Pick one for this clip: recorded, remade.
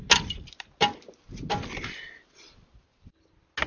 recorded